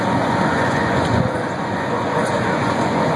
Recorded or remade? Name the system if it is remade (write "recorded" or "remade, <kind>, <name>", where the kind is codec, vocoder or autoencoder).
remade, vocoder, Vocos